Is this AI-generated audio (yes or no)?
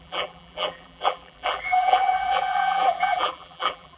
yes